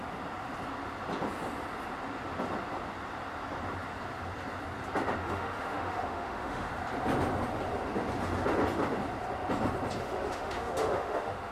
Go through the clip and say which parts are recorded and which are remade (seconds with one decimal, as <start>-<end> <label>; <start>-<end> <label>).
0.0-5.2 recorded; 5.2-6.7 remade; 6.7-10.0 recorded; 10.0-11.5 remade